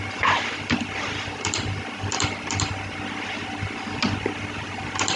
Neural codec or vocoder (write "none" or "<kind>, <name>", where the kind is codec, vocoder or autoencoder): none